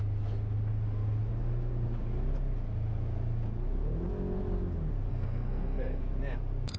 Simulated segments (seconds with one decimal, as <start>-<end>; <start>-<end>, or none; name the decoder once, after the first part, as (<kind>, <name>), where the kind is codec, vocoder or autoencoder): 5.1-6.0 (codec, SNAC)